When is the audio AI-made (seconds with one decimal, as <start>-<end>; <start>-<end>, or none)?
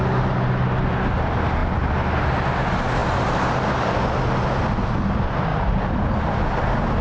5.5-6.6